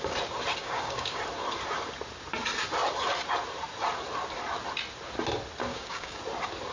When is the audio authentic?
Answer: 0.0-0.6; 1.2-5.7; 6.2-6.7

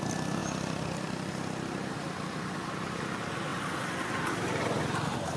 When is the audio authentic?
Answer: 0.0-5.4

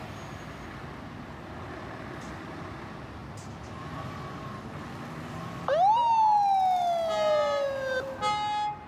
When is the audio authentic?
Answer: 0.0-8.9